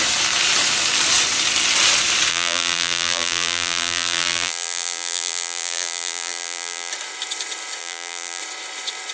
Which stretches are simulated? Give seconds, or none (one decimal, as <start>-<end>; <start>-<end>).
2.3-6.9; 7.8-8.4